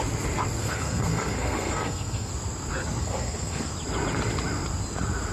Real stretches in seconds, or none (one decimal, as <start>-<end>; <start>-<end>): 0.0-0.6; 2.3-3.0; 3.7-5.3